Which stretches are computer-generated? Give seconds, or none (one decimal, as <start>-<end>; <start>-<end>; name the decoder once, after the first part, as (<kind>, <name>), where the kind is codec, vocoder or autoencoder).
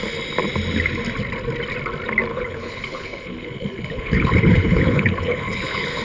2.3-6.0 (codec, HILCodec)